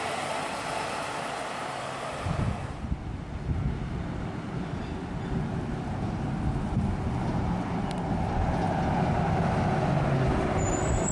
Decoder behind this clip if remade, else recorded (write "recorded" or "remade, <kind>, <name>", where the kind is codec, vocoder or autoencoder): recorded